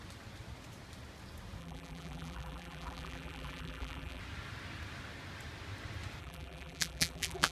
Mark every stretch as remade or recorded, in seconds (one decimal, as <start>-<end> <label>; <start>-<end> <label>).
0.0-1.6 recorded; 1.6-4.2 remade; 4.2-6.2 recorded; 6.2-7.5 remade